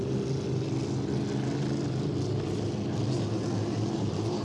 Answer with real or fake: real